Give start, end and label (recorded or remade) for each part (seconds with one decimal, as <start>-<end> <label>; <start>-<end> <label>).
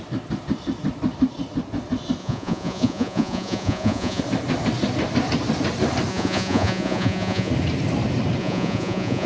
0.0-2.2 recorded; 2.2-4.2 remade; 4.2-6.1 recorded; 6.1-7.5 remade; 7.5-8.4 recorded; 8.4-9.3 remade